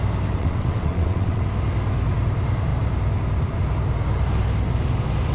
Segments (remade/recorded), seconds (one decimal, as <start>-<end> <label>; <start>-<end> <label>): 0.0-0.4 recorded; 0.4-1.4 remade; 1.4-5.3 recorded